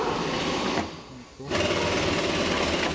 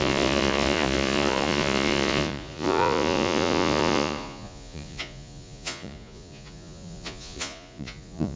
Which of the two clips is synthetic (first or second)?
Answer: second